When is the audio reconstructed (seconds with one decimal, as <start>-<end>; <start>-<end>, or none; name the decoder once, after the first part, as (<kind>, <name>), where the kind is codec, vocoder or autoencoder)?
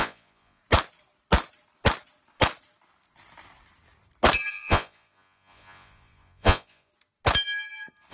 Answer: 0.0-0.6 (vocoder, Vocos); 4.5-6.9